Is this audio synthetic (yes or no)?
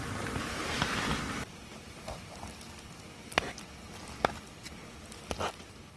no